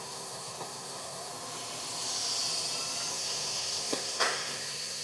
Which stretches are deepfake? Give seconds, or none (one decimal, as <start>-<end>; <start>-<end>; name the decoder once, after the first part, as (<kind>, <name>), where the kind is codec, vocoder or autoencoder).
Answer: 0.0-1.3 (codec, SNAC); 3.1-5.0